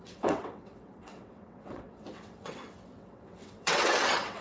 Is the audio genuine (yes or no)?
no